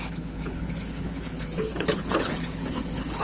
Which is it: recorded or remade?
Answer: remade